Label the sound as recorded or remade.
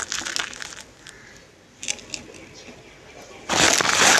recorded